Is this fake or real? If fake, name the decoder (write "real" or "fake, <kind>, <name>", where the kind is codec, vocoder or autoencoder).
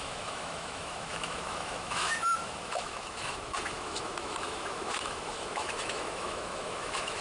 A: fake, autoencoder, DAC-VAE